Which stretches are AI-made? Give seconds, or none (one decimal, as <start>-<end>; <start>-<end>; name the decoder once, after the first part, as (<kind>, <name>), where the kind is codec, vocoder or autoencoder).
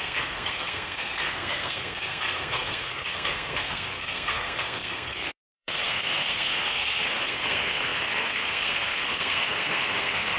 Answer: 0.0-10.4 (codec, SNAC)